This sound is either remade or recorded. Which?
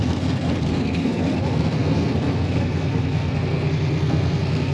remade